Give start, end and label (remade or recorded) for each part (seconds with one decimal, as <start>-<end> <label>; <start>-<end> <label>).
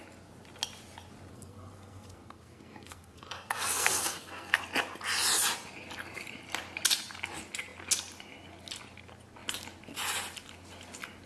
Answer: 0.0-1.3 recorded; 1.3-4.6 remade; 4.6-11.3 recorded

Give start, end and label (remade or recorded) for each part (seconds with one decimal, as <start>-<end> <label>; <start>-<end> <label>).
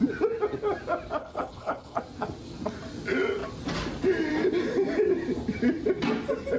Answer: 0.0-1.2 recorded; 1.2-2.0 remade; 2.0-6.6 recorded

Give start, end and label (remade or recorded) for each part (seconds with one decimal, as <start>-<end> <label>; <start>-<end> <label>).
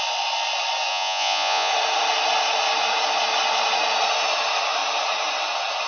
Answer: 0.0-0.9 recorded; 0.9-1.7 remade; 1.7-5.9 recorded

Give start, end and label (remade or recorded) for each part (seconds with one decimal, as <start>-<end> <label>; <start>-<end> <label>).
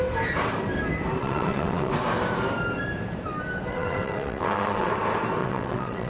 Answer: 0.0-1.2 recorded; 1.2-1.9 remade; 1.9-3.7 recorded; 3.7-4.9 remade; 4.9-5.4 recorded; 5.4-6.1 remade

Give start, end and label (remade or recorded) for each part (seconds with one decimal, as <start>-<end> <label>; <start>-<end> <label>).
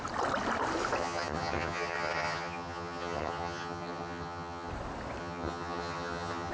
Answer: 0.0-1.0 recorded; 1.0-4.7 remade; 4.7-5.2 recorded; 5.2-6.5 remade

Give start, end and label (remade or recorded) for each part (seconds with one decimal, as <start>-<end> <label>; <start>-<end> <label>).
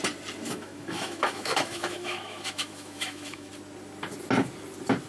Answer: 0.0-0.4 recorded; 0.4-3.5 remade; 3.5-5.1 recorded